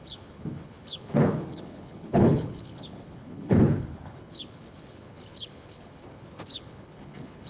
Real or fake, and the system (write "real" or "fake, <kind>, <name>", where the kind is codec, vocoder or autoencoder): fake, codec, HILCodec